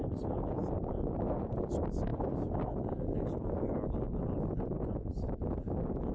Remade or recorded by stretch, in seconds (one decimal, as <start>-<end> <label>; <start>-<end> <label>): 0.0-6.1 recorded